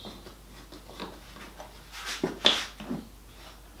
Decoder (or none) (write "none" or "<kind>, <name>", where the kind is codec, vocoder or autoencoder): none